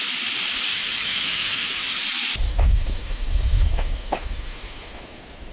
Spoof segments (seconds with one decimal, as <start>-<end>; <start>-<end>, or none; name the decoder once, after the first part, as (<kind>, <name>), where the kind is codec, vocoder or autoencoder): 0.7-2.0 (autoencoder, DAC-VAE); 2.5-5.5